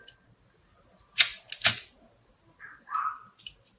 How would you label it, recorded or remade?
recorded